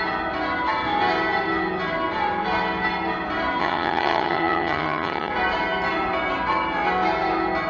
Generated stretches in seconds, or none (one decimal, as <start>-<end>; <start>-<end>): 3.6-5.3